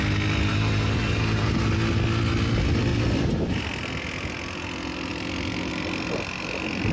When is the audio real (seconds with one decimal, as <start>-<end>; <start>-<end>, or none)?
0.0-0.5; 1.6-2.9; 3.6-6.9